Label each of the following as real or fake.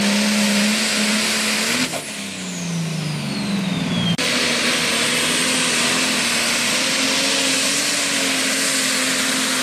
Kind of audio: real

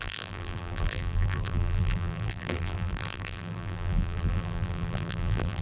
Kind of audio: fake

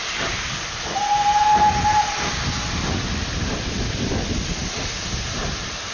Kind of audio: real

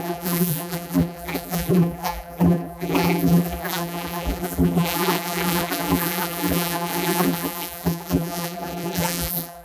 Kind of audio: fake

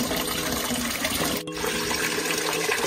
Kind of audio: real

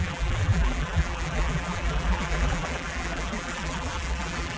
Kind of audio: fake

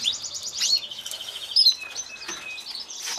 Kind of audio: real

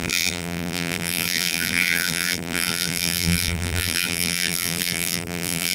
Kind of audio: fake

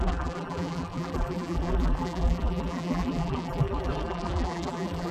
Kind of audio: fake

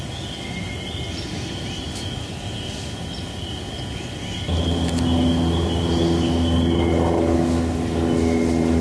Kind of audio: real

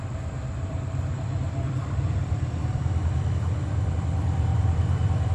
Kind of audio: fake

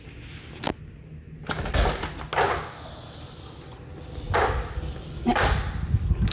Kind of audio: real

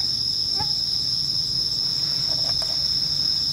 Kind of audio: real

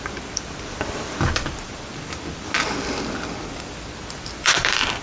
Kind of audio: fake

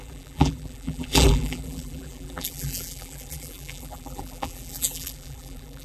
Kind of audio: fake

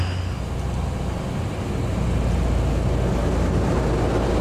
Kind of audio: real